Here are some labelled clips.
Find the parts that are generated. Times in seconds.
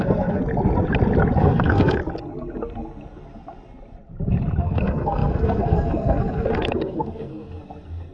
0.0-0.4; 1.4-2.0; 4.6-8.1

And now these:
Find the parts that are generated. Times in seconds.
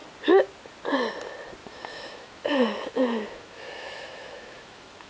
1.6-5.1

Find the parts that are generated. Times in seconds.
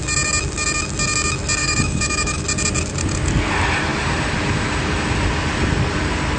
1.6-2.4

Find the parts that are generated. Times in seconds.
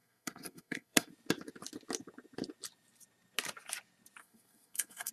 0.0-1.1; 4.2-5.1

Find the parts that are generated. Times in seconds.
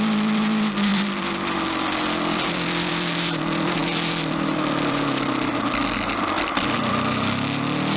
0.0-8.0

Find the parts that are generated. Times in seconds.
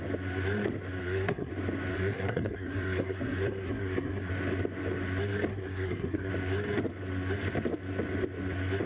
1.0-1.5; 1.9-4.3; 5.5-6.3